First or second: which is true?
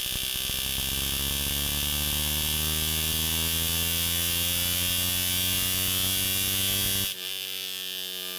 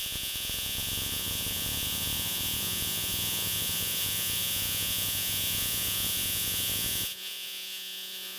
first